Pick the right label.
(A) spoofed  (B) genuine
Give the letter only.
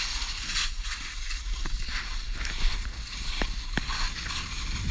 B